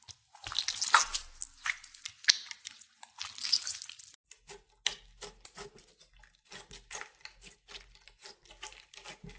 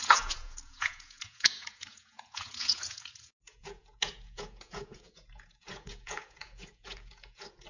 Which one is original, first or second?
first